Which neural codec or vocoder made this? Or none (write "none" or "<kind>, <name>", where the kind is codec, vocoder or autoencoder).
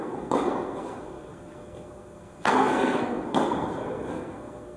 codec, SNAC